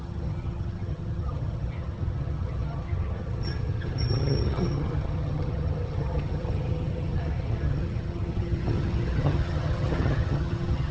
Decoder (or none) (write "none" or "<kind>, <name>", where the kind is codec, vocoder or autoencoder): vocoder, HiFi-GAN